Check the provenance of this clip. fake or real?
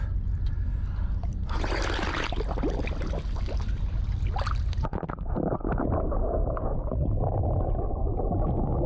real